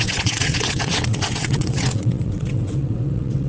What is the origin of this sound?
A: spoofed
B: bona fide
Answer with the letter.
A